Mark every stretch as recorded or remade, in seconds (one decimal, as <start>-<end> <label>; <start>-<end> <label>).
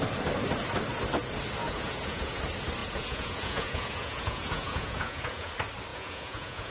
0.0-1.6 recorded; 1.6-2.4 remade; 2.4-2.8 recorded; 2.8-5.5 remade; 5.5-5.9 recorded; 5.9-6.7 remade